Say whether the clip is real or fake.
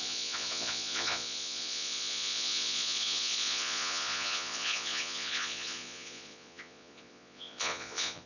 fake